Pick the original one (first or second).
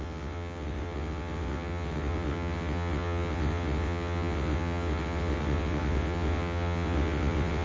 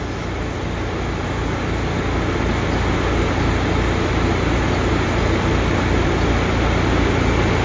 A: second